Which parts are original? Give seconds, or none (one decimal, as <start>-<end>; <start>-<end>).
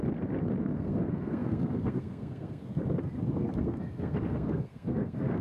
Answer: 0.0-0.6